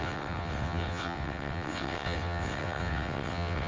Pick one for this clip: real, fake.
fake